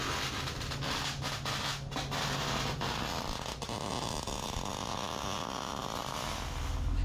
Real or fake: real